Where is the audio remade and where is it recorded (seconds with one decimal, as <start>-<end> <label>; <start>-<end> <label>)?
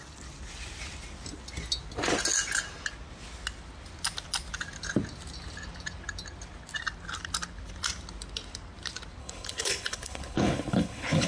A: 0.0-9.2 recorded; 9.2-11.3 remade